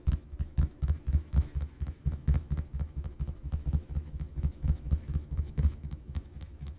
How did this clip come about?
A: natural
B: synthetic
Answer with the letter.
B